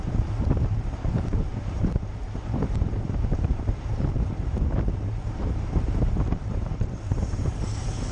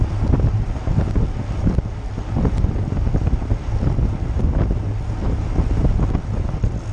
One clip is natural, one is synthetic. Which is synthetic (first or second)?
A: first